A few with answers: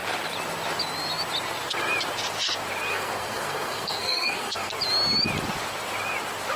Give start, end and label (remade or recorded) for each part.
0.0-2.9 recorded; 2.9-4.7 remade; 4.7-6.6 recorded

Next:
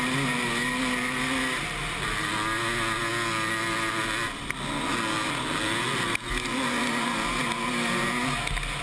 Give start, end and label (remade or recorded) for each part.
0.0-8.8 recorded